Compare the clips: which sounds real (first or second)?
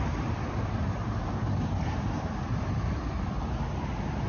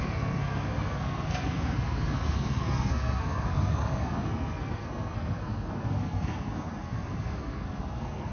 first